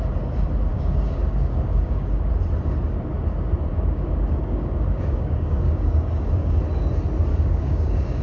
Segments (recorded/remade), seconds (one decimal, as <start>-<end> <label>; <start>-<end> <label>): 0.0-0.7 recorded; 0.7-2.3 remade; 2.3-3.7 recorded; 3.7-6.6 remade; 6.6-7.3 recorded; 7.3-8.2 remade